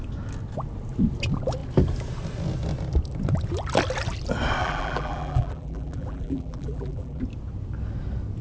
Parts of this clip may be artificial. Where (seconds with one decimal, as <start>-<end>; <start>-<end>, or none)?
4.6-7.2